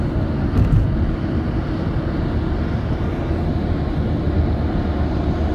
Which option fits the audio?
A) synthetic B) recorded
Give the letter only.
B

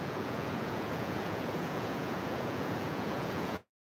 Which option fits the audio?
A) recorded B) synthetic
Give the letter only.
B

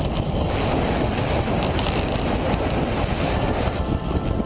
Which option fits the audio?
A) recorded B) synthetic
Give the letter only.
A